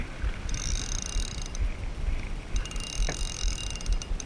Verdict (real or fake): fake